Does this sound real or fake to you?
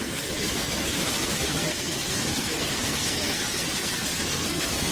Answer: fake